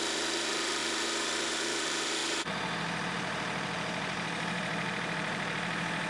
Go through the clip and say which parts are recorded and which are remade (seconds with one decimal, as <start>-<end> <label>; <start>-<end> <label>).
0.0-6.1 remade